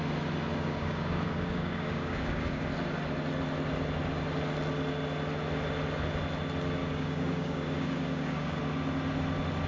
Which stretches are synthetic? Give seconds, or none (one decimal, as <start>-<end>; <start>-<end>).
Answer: 0.5-2.7; 6.8-8.6

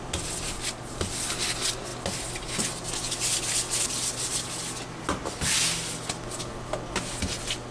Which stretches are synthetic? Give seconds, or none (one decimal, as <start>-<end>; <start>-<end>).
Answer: none

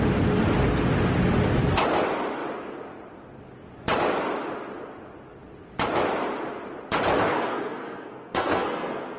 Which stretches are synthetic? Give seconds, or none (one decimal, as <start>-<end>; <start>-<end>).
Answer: 7.3-9.2

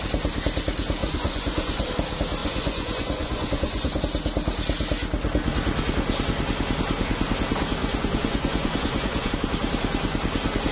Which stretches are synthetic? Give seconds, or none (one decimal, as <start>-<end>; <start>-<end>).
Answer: 1.0-1.9; 2.4-4.0; 7.8-9.3

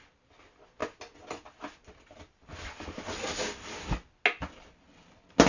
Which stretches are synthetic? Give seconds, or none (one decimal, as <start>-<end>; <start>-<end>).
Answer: none